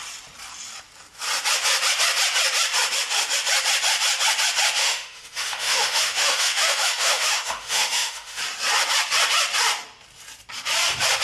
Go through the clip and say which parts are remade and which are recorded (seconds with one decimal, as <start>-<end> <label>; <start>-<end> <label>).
0.0-4.8 recorded; 4.8-8.4 remade; 8.4-11.2 recorded